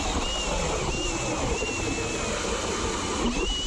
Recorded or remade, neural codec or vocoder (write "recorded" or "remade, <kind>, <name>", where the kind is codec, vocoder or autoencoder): recorded